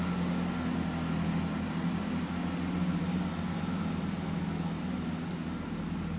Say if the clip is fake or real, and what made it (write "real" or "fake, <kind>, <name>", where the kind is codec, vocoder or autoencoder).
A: real